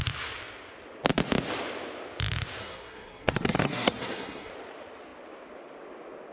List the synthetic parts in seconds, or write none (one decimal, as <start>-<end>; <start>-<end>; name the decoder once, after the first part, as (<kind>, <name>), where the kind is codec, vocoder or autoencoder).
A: 2.6-4.5 (codec, SNAC)

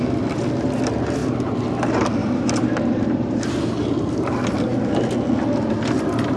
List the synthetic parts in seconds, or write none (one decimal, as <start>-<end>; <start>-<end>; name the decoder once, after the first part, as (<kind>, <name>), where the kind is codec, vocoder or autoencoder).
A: 2.2-4.3 (vocoder, BigVGAN v2)

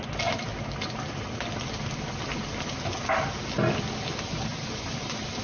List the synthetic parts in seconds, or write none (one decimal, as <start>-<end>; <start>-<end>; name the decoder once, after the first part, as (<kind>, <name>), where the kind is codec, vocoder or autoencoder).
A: none

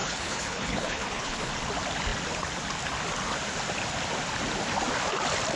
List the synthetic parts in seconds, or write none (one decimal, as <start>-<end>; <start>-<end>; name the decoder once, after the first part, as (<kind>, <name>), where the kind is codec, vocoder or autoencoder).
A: 0.0-1.5 (codec, HILCodec)

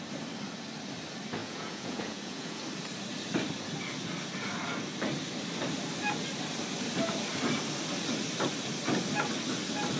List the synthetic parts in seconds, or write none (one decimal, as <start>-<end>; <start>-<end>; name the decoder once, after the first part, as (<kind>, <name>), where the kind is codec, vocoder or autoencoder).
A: 1.4-2.6 (vocoder, Vocos)

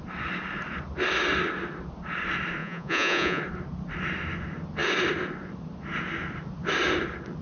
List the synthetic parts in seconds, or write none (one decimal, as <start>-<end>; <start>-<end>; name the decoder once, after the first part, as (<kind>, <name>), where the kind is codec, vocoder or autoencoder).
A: 2.6-3.4 (vocoder, Vocos)